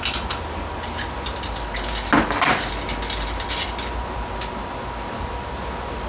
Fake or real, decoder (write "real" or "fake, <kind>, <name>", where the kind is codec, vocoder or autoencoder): real